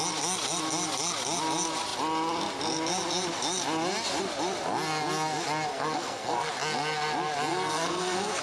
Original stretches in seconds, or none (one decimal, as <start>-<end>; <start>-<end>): 0.0-5.7; 6.5-7.5